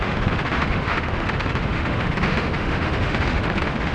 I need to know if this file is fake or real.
fake